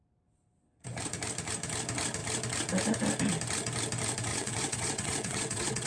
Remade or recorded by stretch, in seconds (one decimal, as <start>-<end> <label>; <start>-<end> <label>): 0.0-4.3 recorded; 4.3-5.9 remade